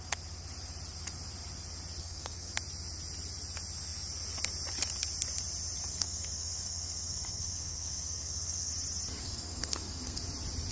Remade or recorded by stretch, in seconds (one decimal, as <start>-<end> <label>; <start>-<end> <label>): 0.0-2.0 recorded; 2.0-2.5 remade; 2.5-5.9 recorded; 5.9-8.7 remade; 8.7-9.2 recorded; 9.2-10.2 remade; 10.2-10.7 recorded